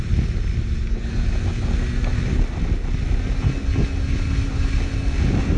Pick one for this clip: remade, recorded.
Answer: recorded